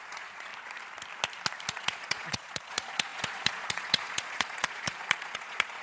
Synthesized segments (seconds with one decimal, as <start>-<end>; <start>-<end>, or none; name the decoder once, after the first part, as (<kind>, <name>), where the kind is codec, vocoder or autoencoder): 0.0-0.5 (vocoder, Vocos); 1.7-5.8